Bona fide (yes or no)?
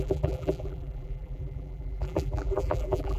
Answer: no